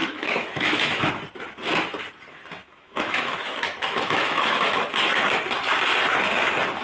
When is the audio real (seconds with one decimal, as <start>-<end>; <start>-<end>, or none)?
1.1-2.6; 4.8-6.8